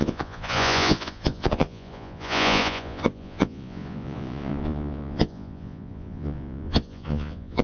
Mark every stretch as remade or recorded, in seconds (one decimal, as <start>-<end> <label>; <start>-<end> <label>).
0.0-7.6 remade